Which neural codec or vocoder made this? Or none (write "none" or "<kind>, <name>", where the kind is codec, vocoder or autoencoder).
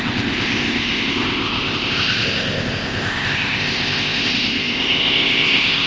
codec, ZipCodec